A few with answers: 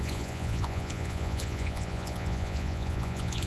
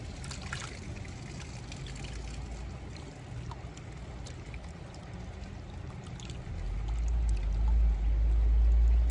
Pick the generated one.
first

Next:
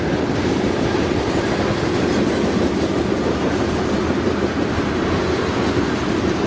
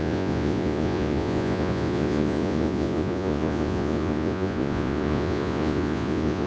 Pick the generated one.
second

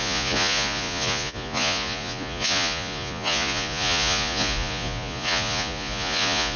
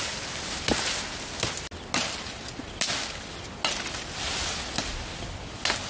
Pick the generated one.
first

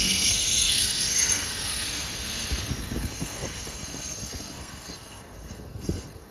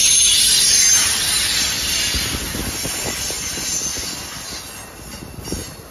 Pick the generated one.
first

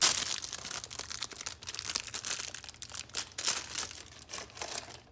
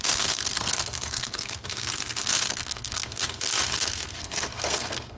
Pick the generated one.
second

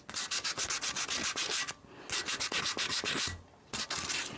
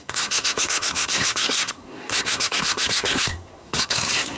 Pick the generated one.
second